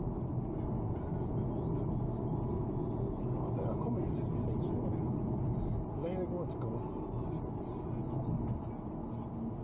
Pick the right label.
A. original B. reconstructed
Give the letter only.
A